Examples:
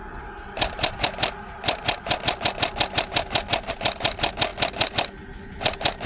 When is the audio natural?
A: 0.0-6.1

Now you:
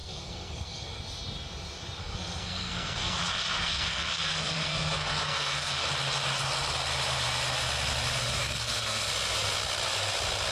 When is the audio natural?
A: 1.0-2.0; 5.9-8.4; 9.1-10.5